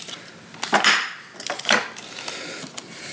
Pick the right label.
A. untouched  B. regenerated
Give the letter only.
A